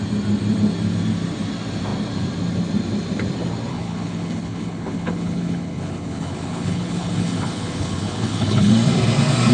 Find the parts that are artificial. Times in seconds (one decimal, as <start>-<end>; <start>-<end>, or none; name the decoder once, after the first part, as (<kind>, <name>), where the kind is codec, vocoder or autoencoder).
3.7-8.7 (codec, HILCodec)